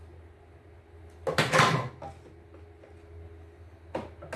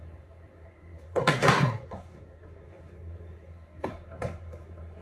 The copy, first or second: second